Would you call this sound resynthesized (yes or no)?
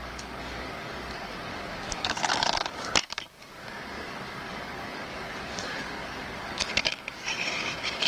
yes